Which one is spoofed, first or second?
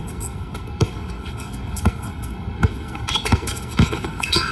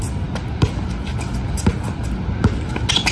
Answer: first